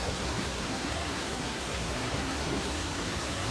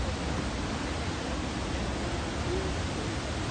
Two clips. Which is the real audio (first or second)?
second